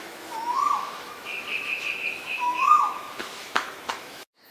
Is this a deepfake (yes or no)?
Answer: yes